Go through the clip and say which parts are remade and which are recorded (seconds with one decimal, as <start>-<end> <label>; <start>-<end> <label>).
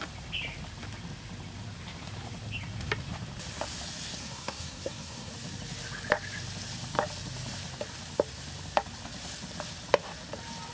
0.0-4.2 recorded; 4.2-5.3 remade; 5.3-10.7 recorded